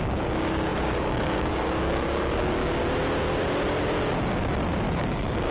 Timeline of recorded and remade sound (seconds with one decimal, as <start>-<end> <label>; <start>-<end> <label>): 0.0-2.8 remade; 2.8-4.9 recorded; 4.9-5.5 remade

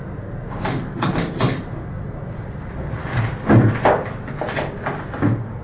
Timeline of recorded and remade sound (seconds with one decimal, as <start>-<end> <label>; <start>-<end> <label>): 0.0-3.0 recorded; 3.0-3.8 remade; 3.8-5.6 recorded

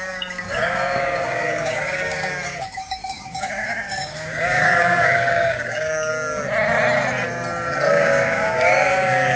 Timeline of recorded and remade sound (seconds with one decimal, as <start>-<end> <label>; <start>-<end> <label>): 0.0-6.1 remade; 6.1-7.9 recorded; 7.9-9.4 remade